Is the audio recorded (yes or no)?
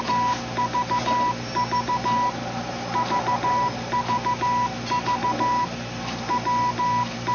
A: yes